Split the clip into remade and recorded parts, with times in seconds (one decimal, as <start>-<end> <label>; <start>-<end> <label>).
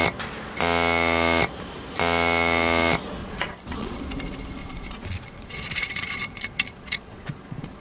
0.0-3.2 recorded; 3.2-4.0 remade; 4.0-4.6 recorded; 4.6-7.8 remade